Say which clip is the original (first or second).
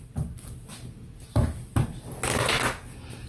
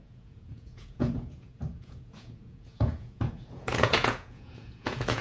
first